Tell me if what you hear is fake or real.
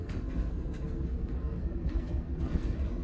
fake